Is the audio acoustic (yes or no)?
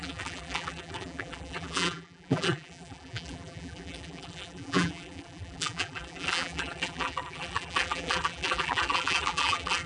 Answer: no